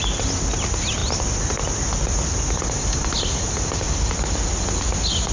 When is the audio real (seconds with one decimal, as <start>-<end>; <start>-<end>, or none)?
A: 0.0-5.3